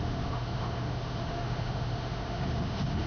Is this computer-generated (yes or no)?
yes